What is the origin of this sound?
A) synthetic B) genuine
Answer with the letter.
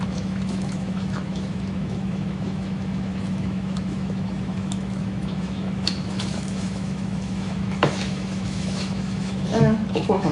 A